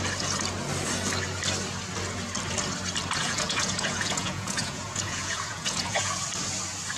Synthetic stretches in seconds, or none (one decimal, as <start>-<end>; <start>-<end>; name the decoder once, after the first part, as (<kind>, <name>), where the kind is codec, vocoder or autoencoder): 3.2-6.2 (vocoder, Vocos)